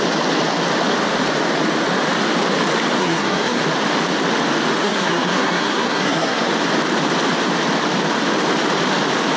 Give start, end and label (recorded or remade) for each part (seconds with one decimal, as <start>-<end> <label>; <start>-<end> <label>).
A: 0.0-3.0 recorded; 3.0-3.6 remade; 3.6-4.8 recorded; 4.8-6.5 remade; 6.5-9.4 recorded

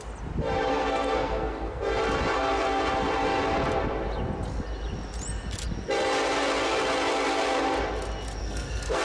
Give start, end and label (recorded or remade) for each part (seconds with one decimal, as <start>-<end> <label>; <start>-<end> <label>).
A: 0.0-0.7 recorded; 0.7-1.8 remade; 1.8-8.4 recorded; 8.4-9.0 remade

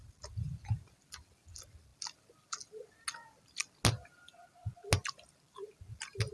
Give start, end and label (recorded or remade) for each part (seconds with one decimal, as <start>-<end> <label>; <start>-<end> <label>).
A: 0.0-6.3 recorded

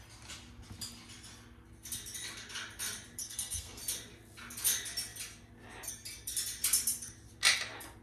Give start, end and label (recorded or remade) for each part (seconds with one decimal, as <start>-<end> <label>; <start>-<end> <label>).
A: 0.0-3.2 recorded; 3.2-3.8 remade; 3.8-8.0 recorded